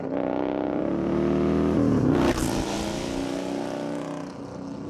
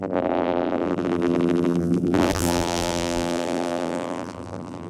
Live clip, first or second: first